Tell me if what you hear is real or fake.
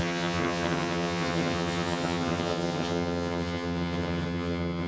fake